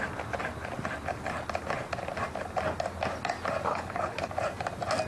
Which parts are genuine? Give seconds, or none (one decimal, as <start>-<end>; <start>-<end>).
0.0-3.7; 4.3-5.1